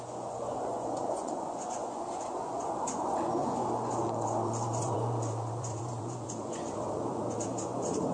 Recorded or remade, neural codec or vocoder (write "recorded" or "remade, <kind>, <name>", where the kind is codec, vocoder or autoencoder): remade, vocoder, Vocos